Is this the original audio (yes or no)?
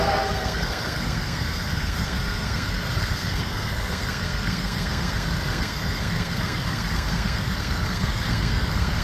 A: no